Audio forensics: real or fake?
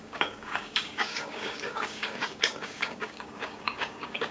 fake